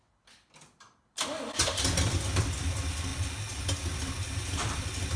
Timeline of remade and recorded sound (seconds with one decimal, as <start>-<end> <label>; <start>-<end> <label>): 0.0-3.1 remade; 3.1-4.3 recorded; 4.3-5.2 remade